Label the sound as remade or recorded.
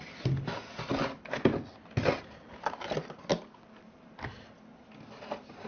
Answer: recorded